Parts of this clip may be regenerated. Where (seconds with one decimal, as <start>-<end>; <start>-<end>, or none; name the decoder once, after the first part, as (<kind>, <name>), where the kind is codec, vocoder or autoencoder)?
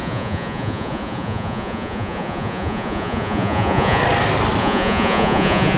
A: 0.0-4.0 (vocoder, Vocos); 4.6-5.8